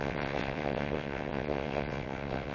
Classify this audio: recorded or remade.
remade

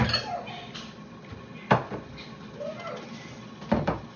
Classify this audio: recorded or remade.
recorded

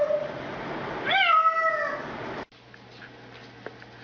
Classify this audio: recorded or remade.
recorded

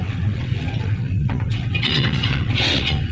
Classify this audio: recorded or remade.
remade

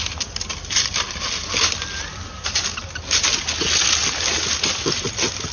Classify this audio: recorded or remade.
recorded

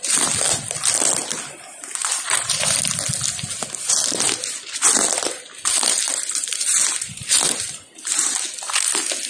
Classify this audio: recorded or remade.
recorded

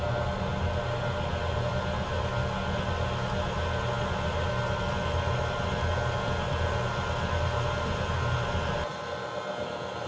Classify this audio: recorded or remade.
recorded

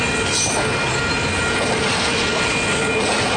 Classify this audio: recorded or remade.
recorded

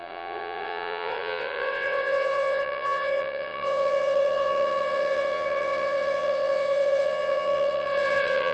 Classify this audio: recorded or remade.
remade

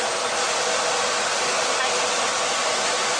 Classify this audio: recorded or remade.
recorded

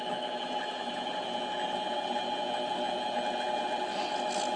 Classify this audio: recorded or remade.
recorded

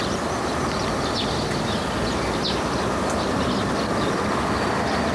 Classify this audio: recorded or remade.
recorded